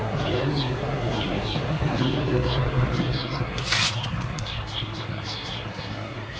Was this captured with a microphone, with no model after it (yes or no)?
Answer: no